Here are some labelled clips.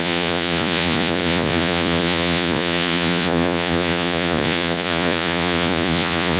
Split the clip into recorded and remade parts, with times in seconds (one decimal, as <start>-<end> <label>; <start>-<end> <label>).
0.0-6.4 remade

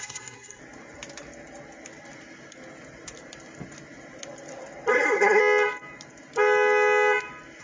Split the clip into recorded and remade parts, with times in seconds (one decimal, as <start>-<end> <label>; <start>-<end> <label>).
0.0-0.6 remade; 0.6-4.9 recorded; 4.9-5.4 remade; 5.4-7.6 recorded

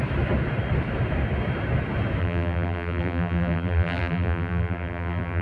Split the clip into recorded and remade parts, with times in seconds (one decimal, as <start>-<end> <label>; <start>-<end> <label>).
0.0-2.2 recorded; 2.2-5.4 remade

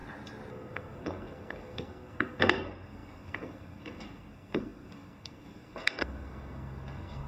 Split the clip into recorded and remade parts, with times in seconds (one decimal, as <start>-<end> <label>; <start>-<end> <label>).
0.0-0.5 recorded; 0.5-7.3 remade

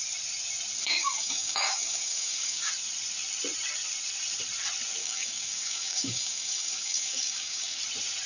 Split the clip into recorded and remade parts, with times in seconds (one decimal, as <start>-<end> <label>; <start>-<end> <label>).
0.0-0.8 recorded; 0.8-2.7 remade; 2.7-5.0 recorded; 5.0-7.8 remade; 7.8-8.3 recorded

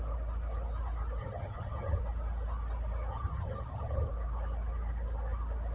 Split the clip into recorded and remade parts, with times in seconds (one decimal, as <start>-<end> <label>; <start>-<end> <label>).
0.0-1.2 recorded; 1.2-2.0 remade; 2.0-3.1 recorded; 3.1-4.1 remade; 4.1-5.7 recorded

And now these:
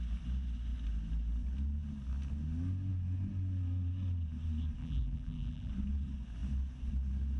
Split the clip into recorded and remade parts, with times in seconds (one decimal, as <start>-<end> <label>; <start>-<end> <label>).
0.0-4.8 recorded; 4.8-5.7 remade; 5.7-7.4 recorded

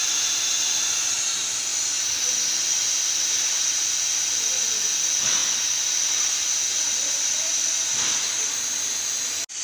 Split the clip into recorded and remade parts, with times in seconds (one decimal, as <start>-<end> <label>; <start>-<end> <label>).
0.0-9.6 recorded